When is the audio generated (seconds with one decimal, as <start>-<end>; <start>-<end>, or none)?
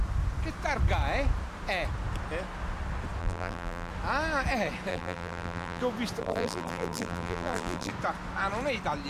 3.2-3.9; 4.9-5.8; 6.2-7.9